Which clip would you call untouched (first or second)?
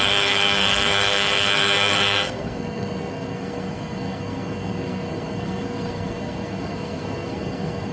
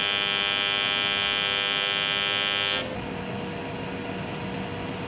second